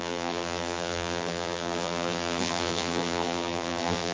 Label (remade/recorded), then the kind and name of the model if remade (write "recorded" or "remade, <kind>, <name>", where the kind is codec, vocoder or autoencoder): remade, vocoder, BigVGAN v2